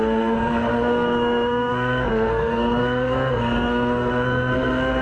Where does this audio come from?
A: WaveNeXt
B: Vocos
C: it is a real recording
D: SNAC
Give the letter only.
D